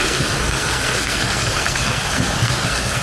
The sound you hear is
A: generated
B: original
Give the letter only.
A